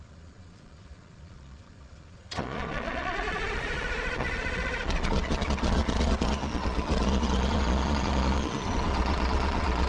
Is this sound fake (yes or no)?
yes